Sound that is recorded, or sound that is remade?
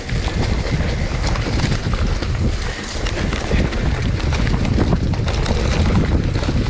recorded